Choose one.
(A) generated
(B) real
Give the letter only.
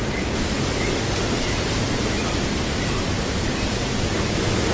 B